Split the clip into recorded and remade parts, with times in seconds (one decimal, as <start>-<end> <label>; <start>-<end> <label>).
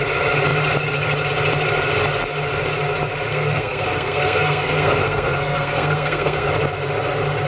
0.0-3.3 recorded; 3.3-6.5 remade; 6.5-7.5 recorded